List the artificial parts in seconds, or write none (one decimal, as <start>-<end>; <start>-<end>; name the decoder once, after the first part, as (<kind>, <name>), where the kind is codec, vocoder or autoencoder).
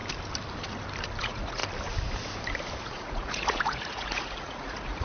1.2-1.6 (vocoder, Vocos); 2.8-5.0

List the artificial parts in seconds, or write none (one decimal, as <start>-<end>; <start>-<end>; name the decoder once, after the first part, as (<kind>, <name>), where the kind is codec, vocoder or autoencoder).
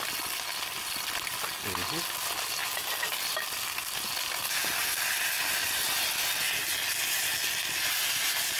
none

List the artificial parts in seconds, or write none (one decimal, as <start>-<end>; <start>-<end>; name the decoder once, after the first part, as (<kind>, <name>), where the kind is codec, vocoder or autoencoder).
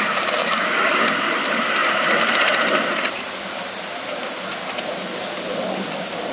0.4-1.3 (codec, DAC)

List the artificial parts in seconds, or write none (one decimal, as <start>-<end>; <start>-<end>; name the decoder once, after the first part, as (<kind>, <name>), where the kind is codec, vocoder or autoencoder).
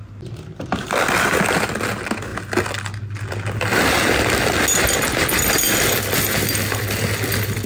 none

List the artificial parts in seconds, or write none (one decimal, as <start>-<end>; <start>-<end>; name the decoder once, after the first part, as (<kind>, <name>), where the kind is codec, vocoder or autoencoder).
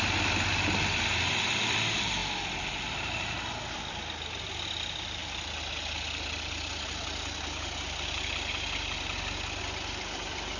none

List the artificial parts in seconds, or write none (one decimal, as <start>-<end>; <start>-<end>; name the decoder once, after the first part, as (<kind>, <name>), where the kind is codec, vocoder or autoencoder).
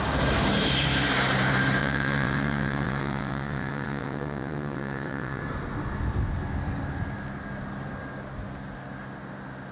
1.8-5.4 (vocoder, WaveNeXt)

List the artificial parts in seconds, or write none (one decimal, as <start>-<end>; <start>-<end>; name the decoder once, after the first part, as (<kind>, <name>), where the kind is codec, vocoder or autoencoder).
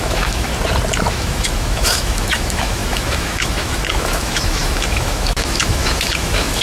0.0-0.5 (autoencoder, DAC-VAE); 1.1-6.6